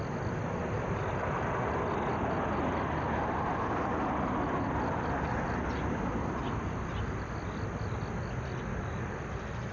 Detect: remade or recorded recorded